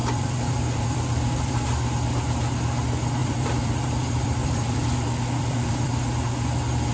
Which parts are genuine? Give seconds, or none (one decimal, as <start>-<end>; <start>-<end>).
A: 1.5-3.2; 6.0-6.9